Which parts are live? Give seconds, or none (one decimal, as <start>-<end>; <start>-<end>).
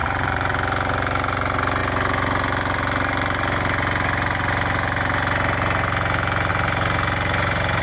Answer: 0.5-7.8